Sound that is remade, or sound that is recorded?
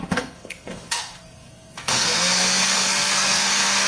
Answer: remade